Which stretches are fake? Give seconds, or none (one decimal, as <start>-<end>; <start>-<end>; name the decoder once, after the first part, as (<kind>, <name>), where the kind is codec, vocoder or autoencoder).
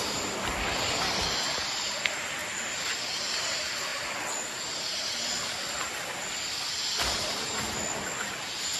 2.4-3.0 (vocoder, BigVGAN v2)